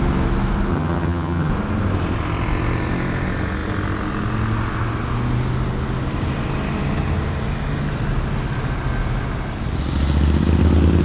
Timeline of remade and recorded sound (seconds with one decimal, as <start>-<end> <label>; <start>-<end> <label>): 0.0-0.7 recorded; 0.7-1.5 remade; 1.5-11.0 recorded